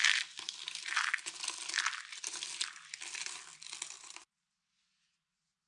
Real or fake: real